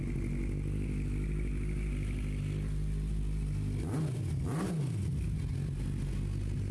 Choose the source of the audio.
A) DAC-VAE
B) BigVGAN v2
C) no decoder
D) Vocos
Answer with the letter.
C